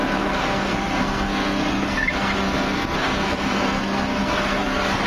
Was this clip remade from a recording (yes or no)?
yes